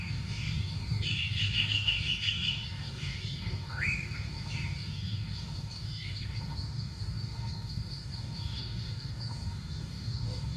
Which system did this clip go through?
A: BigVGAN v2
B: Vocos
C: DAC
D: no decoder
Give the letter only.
C